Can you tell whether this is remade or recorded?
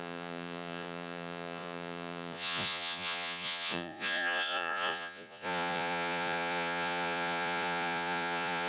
remade